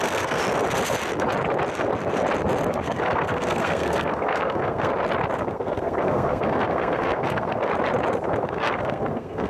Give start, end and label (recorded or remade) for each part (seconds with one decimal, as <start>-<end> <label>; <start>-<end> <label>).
0.0-0.4 remade; 0.4-2.7 recorded; 2.7-4.9 remade; 4.9-5.4 recorded; 5.4-7.7 remade; 7.7-8.4 recorded; 8.4-9.5 remade